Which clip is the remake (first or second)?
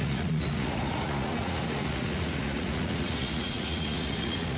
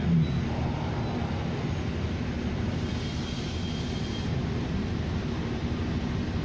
first